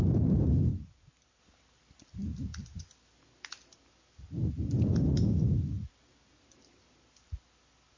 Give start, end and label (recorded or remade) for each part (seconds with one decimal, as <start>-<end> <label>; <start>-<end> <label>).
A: 0.0-8.0 recorded